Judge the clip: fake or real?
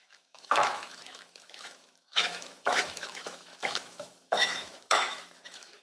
fake